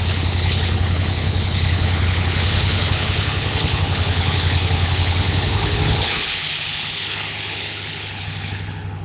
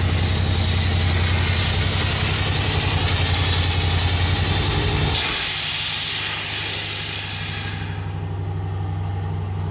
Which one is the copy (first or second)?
first